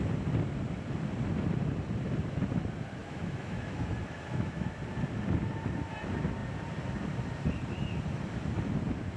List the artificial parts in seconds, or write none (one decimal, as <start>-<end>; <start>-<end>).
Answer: 3.0-4.8